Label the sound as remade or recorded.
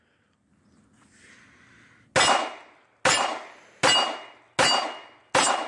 recorded